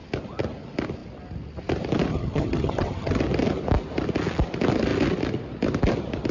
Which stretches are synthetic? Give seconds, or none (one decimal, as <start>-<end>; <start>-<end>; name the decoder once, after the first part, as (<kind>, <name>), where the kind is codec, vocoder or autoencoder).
2.1-3.2 (vocoder, HiFi-GAN)

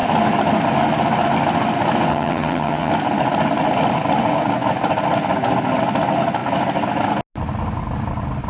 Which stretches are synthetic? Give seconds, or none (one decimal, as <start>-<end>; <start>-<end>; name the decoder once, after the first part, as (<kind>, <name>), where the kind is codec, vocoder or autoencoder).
2.1-2.9 (vocoder, HiFi-GAN)

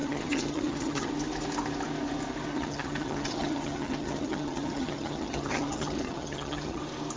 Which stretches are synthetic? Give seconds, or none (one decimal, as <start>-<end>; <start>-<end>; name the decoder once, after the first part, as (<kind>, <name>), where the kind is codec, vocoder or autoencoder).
0.0-1.1 (vocoder, HiFi-GAN); 2.5-6.8

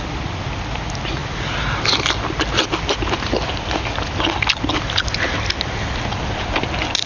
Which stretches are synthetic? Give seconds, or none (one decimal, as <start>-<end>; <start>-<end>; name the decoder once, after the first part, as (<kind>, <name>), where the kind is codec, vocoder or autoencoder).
none

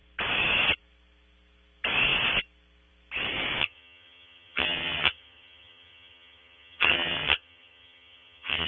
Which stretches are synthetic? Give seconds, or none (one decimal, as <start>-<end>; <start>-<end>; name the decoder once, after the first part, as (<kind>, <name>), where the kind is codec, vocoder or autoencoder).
3.6-8.7 (vocoder, HiFi-GAN)

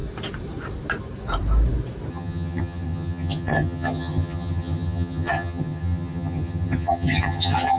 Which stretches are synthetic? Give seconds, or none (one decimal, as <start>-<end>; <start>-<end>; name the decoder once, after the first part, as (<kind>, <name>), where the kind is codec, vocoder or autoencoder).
2.1-7.8 (vocoder, HiFi-GAN)

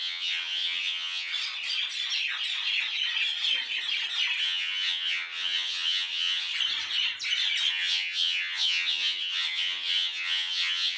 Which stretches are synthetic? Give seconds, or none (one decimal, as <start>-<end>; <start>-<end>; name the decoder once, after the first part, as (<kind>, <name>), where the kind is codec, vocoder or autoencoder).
0.0-1.3 (vocoder, HiFi-GAN); 4.4-6.5; 7.7-11.0